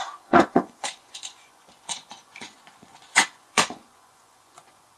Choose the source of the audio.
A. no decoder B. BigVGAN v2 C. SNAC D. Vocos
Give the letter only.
D